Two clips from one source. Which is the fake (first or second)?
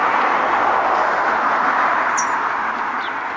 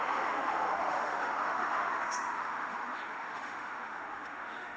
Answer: second